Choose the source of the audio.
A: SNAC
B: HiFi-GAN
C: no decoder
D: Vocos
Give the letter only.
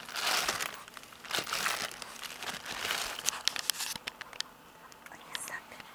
C